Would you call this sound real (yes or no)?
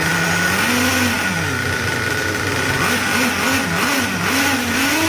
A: yes